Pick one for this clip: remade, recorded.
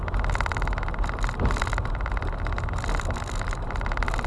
recorded